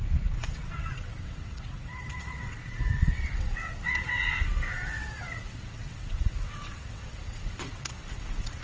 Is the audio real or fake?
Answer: fake